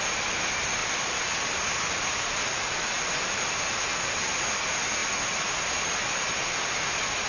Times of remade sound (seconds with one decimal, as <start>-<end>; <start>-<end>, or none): 0.8-3.5; 3.9-4.4